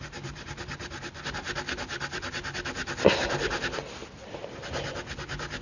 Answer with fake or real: real